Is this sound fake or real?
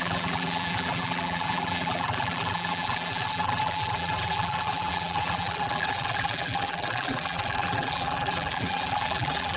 fake